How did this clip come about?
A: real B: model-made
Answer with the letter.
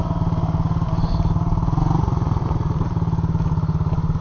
A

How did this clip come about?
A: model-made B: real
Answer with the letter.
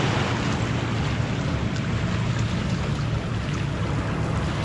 B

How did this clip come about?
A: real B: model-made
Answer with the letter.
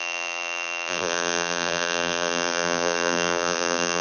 B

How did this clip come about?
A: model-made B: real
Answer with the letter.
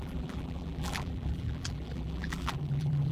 A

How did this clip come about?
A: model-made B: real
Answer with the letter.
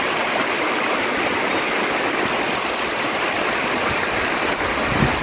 A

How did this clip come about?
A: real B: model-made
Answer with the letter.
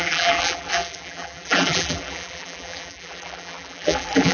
B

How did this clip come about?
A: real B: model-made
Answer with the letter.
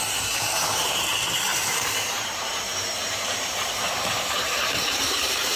B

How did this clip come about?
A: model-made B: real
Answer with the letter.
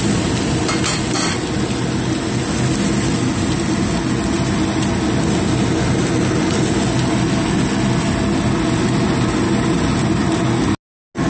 B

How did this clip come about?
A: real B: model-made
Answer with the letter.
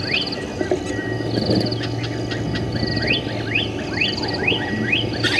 A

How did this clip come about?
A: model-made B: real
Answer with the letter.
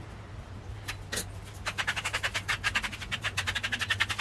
B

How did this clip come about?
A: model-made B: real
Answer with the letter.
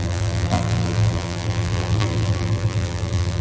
A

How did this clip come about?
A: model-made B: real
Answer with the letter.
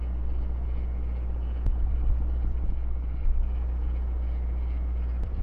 B